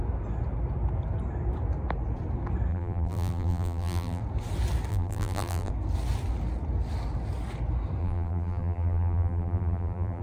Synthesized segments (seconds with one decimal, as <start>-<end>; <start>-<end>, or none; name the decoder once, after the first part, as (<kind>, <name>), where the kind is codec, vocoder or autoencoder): 2.7-4.2 (vocoder, BigVGAN v2); 4.9-5.7; 8.0-10.2